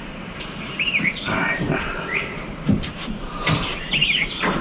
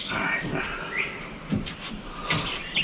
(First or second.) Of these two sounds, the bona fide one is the second